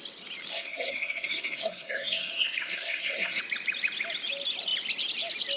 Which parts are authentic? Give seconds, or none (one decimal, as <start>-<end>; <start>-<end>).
0.0-0.5; 3.4-5.6